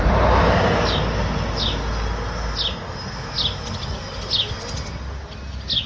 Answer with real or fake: real